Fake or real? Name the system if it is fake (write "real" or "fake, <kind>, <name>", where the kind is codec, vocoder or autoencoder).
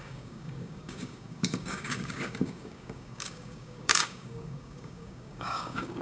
fake, codec, DAC